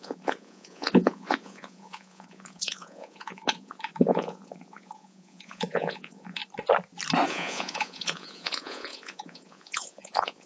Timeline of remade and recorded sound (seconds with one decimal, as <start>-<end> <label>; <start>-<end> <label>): 0.0-6.4 remade; 6.4-7.3 recorded; 7.3-10.5 remade